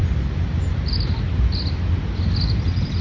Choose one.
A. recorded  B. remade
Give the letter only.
A